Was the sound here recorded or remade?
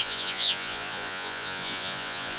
remade